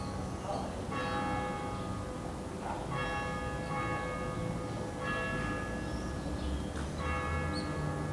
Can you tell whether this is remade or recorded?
recorded